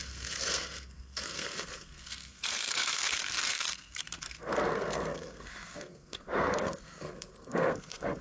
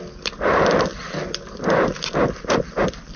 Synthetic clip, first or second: first